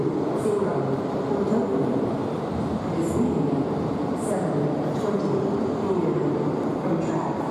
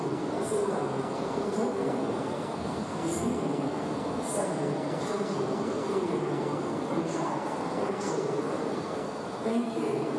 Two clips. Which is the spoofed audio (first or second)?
second